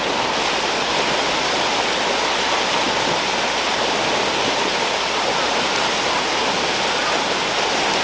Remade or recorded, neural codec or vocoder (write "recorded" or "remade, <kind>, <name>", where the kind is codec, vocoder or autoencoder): recorded